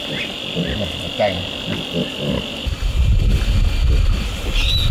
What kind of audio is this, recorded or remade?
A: recorded